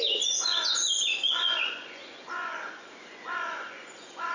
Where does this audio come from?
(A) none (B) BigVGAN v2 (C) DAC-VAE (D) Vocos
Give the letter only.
D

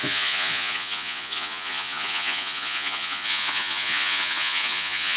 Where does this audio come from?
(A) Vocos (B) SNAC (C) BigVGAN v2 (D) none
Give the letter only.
A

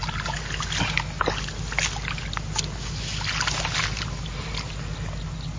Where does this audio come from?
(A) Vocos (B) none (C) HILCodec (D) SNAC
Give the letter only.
B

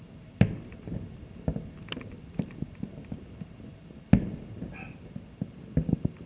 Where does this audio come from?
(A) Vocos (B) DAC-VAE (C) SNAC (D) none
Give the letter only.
D